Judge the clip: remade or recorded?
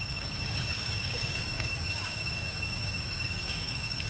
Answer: remade